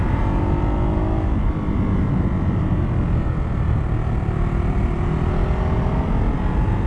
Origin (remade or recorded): recorded